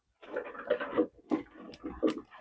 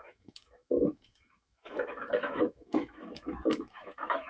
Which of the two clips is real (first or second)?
first